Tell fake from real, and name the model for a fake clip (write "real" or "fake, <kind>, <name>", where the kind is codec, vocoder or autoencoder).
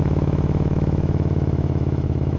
fake, autoencoder, DAC-VAE